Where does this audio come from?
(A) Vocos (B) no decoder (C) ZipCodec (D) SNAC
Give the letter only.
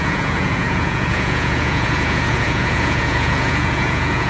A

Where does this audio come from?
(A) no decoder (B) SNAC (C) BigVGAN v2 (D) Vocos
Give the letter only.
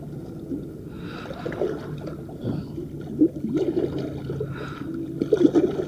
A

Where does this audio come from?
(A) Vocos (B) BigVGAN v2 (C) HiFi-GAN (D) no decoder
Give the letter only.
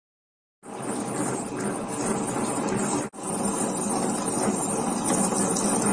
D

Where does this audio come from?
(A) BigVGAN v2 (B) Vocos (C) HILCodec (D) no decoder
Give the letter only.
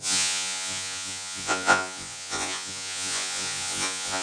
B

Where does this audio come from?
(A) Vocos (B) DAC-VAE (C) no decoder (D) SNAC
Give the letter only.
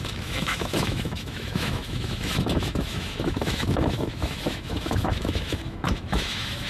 B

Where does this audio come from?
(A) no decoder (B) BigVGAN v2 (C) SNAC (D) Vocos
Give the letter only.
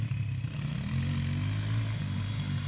A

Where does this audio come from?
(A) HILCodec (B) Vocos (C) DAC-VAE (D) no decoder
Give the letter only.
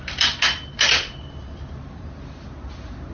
D